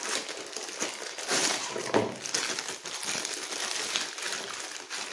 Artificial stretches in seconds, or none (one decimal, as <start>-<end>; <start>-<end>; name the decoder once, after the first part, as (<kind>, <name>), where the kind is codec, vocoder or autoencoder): none